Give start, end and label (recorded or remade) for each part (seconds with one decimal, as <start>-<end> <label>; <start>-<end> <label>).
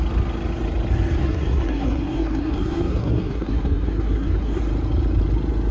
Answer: 0.0-1.2 recorded; 1.2-4.6 remade; 4.6-5.7 recorded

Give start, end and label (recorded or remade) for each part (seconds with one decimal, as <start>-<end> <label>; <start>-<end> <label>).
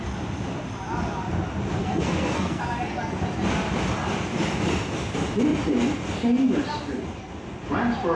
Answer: 0.0-1.8 recorded; 1.8-2.6 remade; 2.6-8.1 recorded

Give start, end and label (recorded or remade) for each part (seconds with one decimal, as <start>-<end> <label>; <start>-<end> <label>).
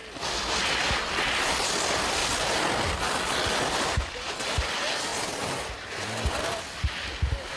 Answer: 0.0-7.6 recorded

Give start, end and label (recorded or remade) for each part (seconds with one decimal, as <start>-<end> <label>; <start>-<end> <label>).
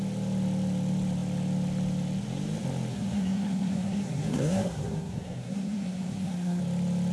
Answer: 0.0-2.9 recorded; 2.9-6.6 remade; 6.6-7.1 recorded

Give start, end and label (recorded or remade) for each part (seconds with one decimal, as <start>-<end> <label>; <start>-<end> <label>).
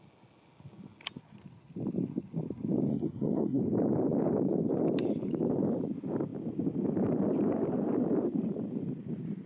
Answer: 0.0-2.9 recorded; 2.9-3.6 remade; 3.6-9.5 recorded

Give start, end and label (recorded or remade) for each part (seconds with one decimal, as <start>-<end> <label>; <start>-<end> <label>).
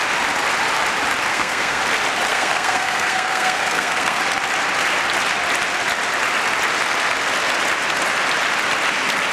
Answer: 0.0-1.3 recorded; 1.3-1.8 remade; 1.8-2.3 recorded; 2.3-4.2 remade; 4.2-9.3 recorded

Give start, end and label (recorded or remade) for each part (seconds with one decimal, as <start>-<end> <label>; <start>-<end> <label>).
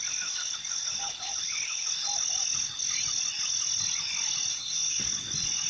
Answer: 0.0-4.5 recorded; 4.5-5.0 remade; 5.0-5.7 recorded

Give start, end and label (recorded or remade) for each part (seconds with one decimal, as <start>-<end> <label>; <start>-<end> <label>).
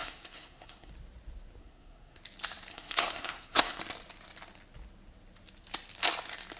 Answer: 0.0-0.9 remade; 0.9-1.6 recorded; 1.6-2.2 remade; 2.2-2.7 recorded; 2.7-3.8 remade; 3.8-6.6 recorded